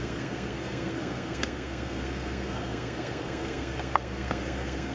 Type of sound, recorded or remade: remade